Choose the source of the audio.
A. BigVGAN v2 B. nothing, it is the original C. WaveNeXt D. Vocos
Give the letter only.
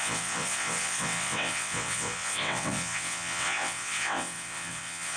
C